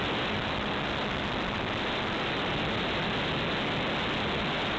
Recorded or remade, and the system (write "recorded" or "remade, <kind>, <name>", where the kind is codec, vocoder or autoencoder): recorded